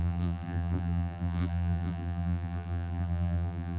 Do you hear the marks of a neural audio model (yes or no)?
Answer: yes